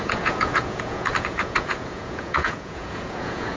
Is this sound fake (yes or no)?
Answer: yes